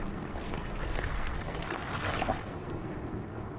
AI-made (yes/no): yes